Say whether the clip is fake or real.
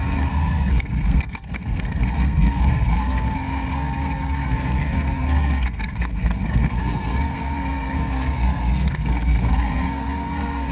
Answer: fake